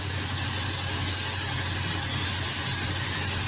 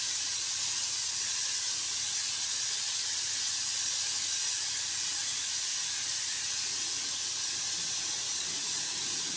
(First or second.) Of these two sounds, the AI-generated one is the second